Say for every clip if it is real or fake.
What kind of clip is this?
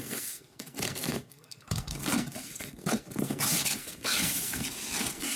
fake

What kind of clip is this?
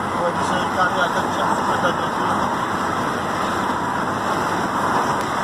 real